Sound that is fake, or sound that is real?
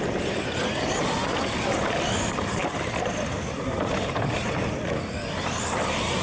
real